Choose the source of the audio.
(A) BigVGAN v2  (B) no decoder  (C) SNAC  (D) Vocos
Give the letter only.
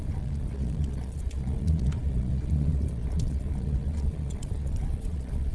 D